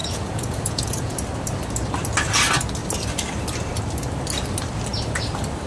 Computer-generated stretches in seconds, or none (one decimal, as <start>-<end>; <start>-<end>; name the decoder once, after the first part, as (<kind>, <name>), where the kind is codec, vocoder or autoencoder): 0.0-1.1 (vocoder, Vocos)